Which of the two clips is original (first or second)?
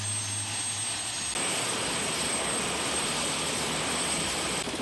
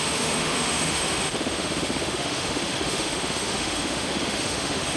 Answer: first